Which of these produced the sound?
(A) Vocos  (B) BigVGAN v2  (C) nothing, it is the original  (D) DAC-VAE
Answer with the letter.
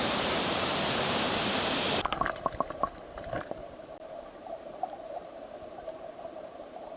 B